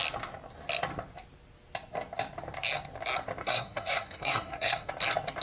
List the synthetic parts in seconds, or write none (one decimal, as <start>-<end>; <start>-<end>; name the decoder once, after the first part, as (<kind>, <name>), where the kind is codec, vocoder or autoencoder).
3.4-4.9 (codec, SNAC)